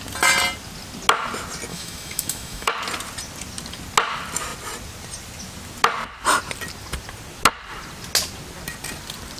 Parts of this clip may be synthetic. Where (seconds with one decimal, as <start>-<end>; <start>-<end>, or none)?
1.7-2.7